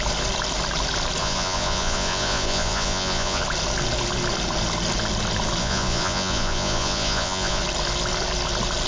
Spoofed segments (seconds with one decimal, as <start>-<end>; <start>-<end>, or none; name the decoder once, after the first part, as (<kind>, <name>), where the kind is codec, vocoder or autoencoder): 1.2-3.4 (vocoder, Vocos); 5.6-7.6